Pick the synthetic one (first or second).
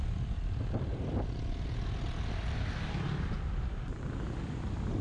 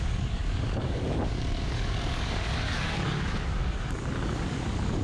second